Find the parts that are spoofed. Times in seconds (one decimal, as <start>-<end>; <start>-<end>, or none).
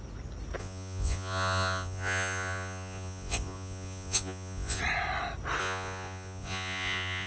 0.6-4.8; 5.6-7.3